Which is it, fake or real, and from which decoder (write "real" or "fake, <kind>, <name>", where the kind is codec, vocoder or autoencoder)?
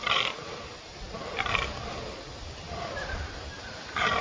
real